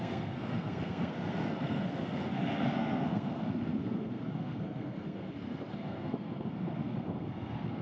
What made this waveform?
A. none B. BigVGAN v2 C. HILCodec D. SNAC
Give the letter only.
D